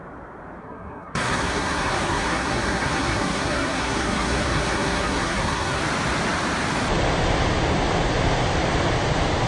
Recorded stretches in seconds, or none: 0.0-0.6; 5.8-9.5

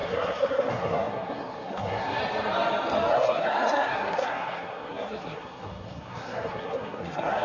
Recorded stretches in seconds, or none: 2.2-3.1

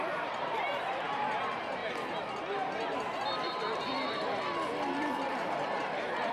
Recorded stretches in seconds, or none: 1.8-5.3

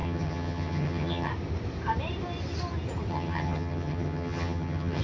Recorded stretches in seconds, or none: 1.3-3.1